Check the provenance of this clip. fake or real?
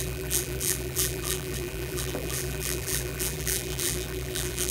fake